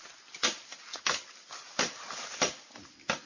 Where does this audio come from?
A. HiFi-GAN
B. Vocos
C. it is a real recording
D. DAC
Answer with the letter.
C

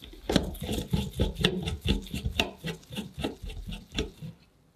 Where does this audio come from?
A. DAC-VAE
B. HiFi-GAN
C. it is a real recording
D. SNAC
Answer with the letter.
C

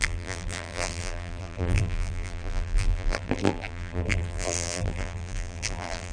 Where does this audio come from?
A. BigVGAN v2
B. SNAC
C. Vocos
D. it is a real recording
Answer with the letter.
A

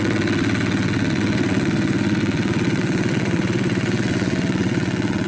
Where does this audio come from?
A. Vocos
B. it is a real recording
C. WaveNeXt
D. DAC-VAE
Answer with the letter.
C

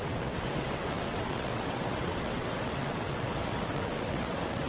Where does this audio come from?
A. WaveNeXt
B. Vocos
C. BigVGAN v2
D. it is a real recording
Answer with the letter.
A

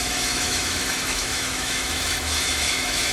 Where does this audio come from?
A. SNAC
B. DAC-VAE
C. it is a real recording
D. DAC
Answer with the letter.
B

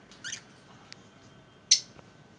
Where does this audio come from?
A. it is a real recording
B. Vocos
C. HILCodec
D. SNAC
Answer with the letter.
A